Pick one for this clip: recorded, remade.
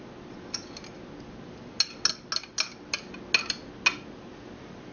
recorded